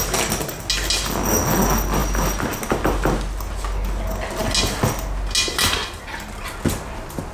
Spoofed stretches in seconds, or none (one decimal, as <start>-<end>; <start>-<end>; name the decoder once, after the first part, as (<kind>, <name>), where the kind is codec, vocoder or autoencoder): none